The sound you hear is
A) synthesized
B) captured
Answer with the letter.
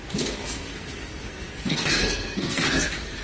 A